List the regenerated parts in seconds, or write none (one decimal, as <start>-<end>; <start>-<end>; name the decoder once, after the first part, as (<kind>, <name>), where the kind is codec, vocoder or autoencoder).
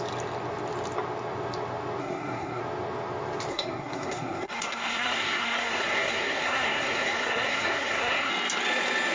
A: 2.0-2.6 (codec, SNAC); 3.5-8.3